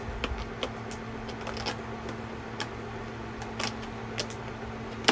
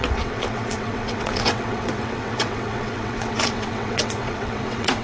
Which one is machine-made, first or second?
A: second